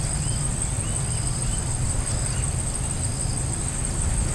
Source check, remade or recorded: recorded